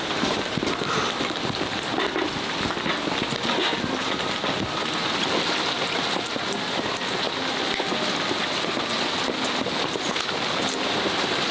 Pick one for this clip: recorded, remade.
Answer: recorded